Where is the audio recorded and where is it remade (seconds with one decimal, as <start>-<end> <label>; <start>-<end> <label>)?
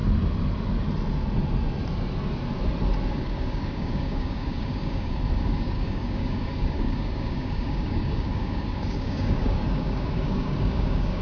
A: 0.0-3.1 recorded; 3.1-11.2 remade